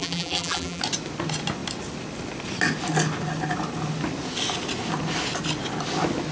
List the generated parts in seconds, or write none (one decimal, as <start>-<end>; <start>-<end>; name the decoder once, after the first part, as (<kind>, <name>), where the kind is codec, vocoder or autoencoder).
0.0-0.8 (vocoder, BigVGAN v2)